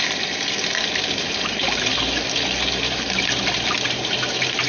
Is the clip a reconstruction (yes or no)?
no